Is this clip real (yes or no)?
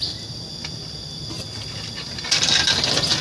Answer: yes